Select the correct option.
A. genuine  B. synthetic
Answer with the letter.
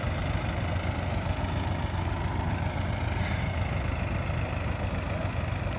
A